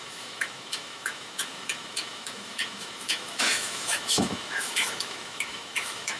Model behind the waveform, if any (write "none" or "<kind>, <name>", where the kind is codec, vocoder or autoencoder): autoencoder, DAC-VAE